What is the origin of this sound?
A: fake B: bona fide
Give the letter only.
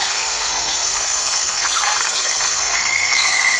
A